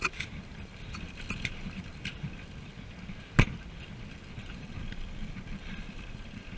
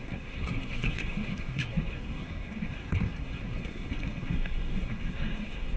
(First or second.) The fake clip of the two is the second